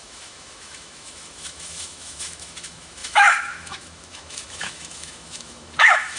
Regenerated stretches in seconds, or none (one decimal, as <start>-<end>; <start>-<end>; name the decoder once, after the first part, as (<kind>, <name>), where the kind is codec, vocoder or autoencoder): 0.0-6.2 (autoencoder, DAC-VAE)